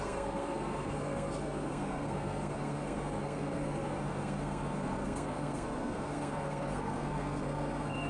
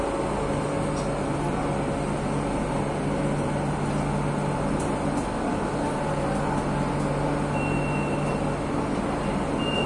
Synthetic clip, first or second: first